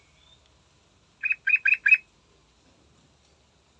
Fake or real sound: real